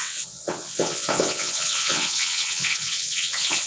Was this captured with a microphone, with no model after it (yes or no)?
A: no